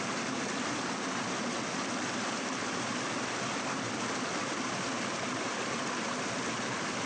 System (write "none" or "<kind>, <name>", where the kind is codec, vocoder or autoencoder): none